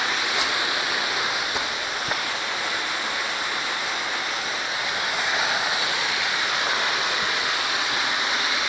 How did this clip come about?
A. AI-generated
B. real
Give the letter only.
B